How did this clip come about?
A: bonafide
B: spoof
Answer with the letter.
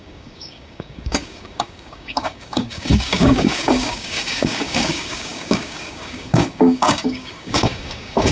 B